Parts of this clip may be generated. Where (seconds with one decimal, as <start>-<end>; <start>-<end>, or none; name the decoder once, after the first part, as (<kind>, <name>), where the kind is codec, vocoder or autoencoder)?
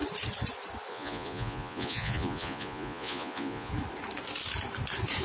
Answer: 0.9-3.7 (vocoder, Vocos)